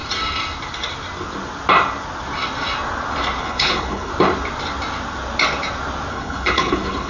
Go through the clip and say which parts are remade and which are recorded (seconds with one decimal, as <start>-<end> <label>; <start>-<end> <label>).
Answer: 0.0-3.4 recorded; 3.4-4.1 remade; 4.1-6.1 recorded; 6.1-7.1 remade